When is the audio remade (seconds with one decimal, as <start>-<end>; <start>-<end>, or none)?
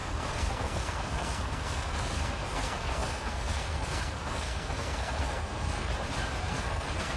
0.0-5.9; 6.4-7.2